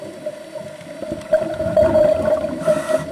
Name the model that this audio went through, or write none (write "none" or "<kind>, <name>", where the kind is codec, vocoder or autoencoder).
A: none